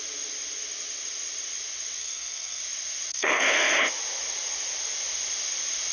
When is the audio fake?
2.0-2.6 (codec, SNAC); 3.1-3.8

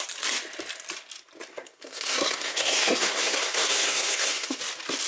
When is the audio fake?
1.5-4.6 (codec, SNAC)

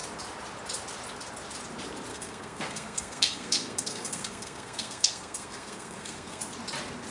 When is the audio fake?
2.1-6.4 (codec, SNAC)

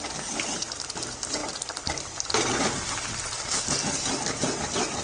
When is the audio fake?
none